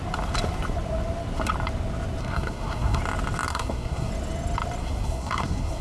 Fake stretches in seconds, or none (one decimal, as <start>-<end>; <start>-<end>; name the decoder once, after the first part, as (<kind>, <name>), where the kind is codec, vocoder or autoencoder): 2.2-3.0 (codec, SNAC); 3.5-4.1; 4.8-5.8